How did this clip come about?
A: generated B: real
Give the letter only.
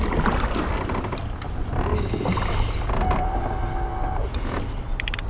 B